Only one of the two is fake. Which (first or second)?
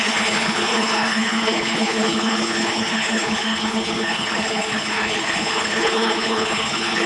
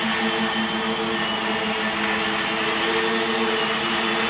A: first